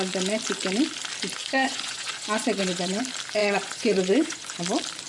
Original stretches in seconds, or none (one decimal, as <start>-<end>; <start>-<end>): 0.0-1.4; 3.0-3.4; 4.6-5.1